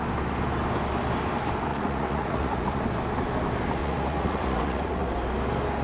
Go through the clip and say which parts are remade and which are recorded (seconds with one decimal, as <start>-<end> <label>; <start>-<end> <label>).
0.0-1.7 recorded; 1.7-2.8 remade; 2.8-3.8 recorded; 3.8-5.1 remade; 5.1-5.8 recorded